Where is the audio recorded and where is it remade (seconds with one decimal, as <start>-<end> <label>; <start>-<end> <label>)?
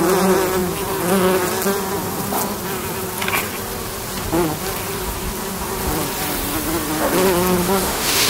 0.0-7.6 recorded; 7.6-8.3 remade